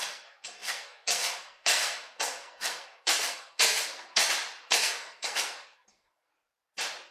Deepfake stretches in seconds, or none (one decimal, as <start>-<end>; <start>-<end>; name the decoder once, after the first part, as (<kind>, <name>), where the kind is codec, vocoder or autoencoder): 0.0-4.2 (codec, SNAC); 4.7-6.3